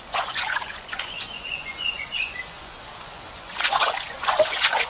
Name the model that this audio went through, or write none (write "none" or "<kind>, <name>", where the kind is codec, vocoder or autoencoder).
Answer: vocoder, Vocos